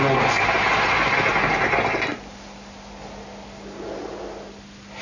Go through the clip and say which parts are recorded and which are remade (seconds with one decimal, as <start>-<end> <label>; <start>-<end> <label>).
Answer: 0.0-5.0 recorded

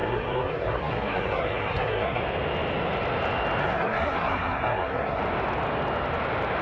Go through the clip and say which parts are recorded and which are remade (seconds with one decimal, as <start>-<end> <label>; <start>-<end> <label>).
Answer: 0.0-2.2 remade; 2.2-3.6 recorded; 3.6-5.2 remade; 5.2-6.6 recorded

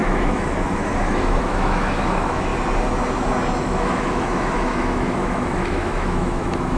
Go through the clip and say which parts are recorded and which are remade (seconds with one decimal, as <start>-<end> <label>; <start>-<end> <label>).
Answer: 0.0-2.5 remade; 2.5-3.6 recorded; 3.6-6.8 remade